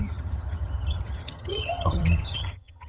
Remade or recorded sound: remade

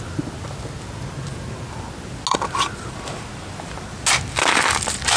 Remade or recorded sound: recorded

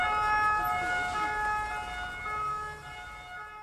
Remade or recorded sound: recorded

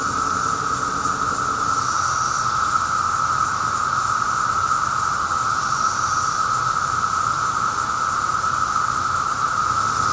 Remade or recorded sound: recorded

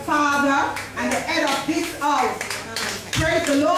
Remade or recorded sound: remade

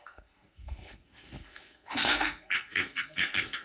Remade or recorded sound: remade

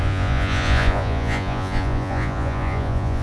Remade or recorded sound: remade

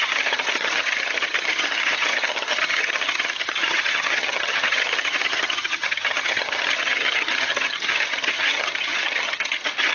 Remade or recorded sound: remade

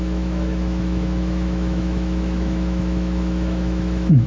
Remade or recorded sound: remade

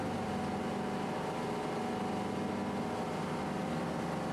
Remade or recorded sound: recorded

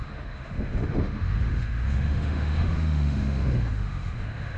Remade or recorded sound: remade